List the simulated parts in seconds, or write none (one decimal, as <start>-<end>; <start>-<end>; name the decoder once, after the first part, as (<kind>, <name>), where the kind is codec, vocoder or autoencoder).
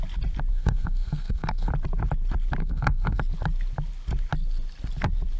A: 0.5-1.7 (codec, SNAC); 2.6-3.2